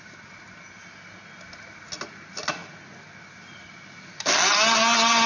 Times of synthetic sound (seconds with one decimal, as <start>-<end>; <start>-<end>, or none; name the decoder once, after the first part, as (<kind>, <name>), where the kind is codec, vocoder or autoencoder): none